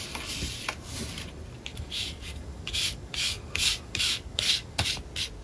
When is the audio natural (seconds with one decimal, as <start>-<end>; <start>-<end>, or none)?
0.0-1.7; 4.9-5.4

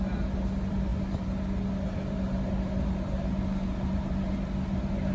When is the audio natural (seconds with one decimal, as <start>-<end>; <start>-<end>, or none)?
0.0-5.1